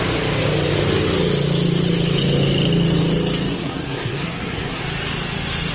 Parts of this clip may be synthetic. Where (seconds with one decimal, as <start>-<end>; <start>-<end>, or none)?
3.5-4.8